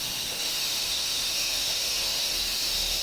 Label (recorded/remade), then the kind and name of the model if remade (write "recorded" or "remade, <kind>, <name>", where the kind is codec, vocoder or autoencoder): remade, autoencoder, DAC-VAE